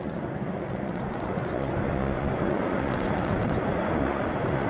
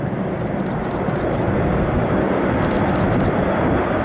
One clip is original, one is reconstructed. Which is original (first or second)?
second